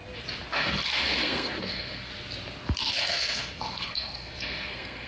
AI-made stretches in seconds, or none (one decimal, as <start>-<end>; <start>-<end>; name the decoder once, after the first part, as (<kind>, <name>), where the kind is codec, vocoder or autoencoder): 0.5-2.1 (codec, SNAC); 2.8-5.1